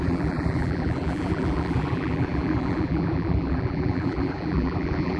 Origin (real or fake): fake